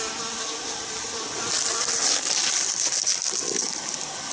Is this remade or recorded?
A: recorded